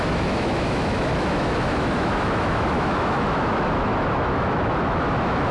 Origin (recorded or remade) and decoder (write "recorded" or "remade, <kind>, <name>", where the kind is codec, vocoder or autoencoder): remade, autoencoder, DAC-VAE